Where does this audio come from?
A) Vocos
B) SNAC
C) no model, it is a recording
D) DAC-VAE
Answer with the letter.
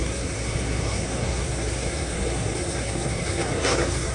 B